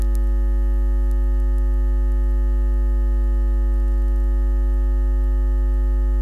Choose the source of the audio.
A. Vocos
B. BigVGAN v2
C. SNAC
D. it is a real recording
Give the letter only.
D